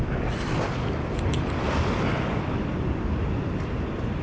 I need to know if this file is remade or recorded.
recorded